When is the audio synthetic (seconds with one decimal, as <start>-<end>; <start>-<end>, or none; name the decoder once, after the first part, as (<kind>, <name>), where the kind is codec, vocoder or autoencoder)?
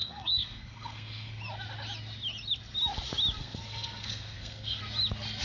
0.0-1.3 (codec, SNAC); 3.4-4.8